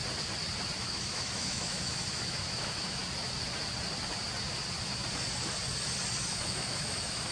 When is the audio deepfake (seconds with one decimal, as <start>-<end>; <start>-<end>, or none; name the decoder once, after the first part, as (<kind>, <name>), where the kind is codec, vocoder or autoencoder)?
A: 0.8-3.0 (autoencoder, DAC-VAE); 6.3-7.3